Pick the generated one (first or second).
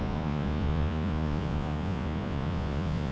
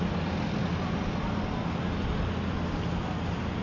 first